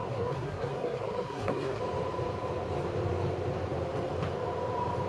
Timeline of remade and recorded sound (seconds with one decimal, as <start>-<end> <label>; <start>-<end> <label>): 0.0-1.8 remade; 1.8-5.1 recorded